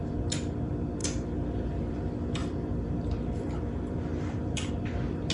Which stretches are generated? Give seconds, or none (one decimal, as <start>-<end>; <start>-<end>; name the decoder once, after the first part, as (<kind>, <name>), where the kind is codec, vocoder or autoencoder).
1.0-2.0 (vocoder, BigVGAN v2); 2.4-4.7